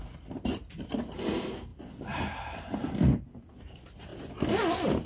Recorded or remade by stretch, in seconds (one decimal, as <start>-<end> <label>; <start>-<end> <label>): 0.0-5.1 recorded